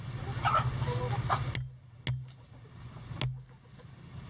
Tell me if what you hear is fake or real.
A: real